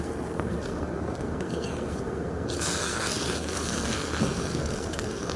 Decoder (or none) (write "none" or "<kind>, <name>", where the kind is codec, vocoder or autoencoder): codec, SNAC